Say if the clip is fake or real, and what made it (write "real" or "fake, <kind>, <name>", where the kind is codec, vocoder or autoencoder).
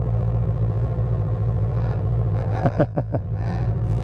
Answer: fake, vocoder, BigVGAN v2